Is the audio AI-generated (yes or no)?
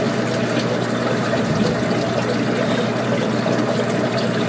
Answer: no